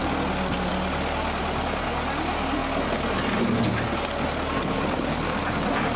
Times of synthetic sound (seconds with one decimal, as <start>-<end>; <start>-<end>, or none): none